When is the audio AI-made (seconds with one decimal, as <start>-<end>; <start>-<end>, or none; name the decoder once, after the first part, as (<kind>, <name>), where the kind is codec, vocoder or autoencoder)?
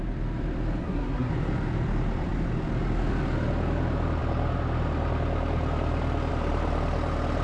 0.8-1.3 (codec, SNAC)